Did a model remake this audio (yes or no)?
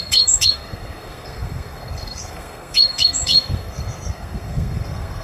yes